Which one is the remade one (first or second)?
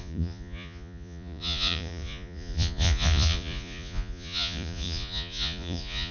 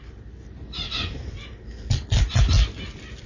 first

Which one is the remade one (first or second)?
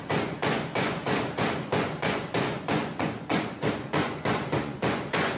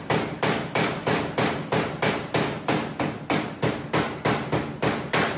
first